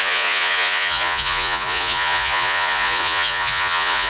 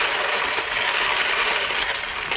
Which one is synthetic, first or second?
first